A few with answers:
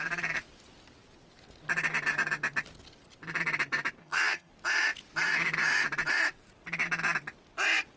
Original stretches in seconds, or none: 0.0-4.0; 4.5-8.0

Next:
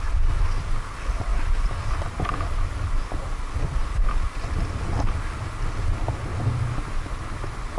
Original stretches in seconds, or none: 0.0-1.3; 2.3-7.8

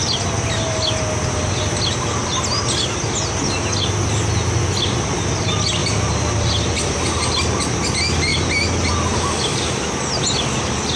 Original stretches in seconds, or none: 0.0-5.8; 6.9-8.3; 8.9-11.0

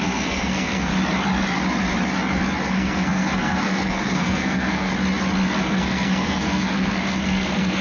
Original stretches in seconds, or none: 0.9-2.7; 4.9-5.6

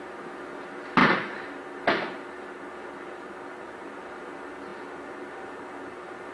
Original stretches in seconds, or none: 0.0-6.3